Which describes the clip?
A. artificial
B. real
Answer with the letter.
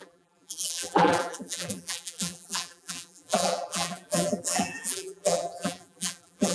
A